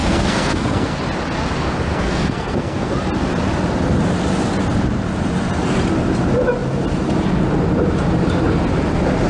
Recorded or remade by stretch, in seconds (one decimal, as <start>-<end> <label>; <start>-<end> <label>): 0.0-1.0 remade; 1.0-1.9 recorded; 1.9-2.9 remade; 2.9-9.3 recorded